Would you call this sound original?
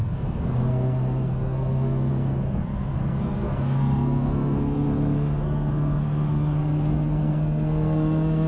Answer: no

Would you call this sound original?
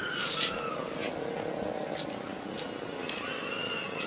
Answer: yes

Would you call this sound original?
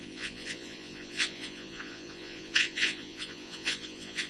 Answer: no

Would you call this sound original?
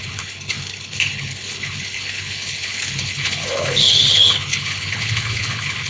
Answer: no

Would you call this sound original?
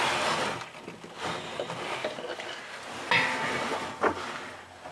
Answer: yes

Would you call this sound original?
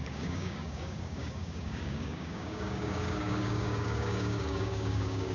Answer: no